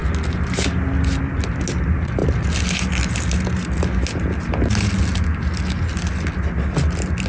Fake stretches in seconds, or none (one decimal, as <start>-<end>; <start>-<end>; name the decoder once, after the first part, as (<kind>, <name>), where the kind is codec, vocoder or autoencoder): none